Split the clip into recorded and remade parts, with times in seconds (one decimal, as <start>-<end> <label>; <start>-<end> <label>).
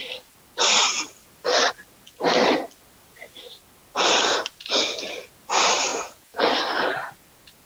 0.0-5.9 recorded; 5.9-6.4 remade; 6.4-7.7 recorded